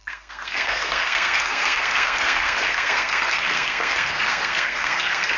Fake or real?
fake